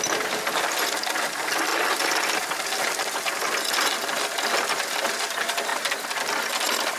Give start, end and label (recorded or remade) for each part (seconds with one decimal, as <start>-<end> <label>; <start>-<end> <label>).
0.0-7.0 recorded